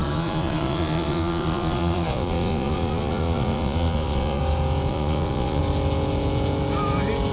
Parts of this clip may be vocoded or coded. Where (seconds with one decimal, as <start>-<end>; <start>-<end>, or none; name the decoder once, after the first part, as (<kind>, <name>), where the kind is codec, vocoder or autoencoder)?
0.0-4.4 (vocoder, Vocos); 4.9-5.6